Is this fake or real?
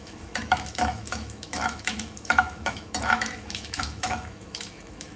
fake